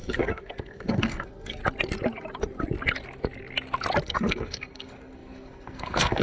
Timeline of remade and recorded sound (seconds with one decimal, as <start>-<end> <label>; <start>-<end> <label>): 0.0-1.6 remade; 1.6-4.0 recorded; 4.0-6.2 remade